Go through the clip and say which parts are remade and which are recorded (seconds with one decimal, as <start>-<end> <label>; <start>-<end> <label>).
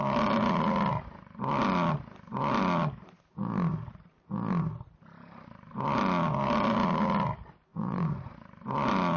0.0-7.7 recorded; 7.7-8.3 remade; 8.3-9.2 recorded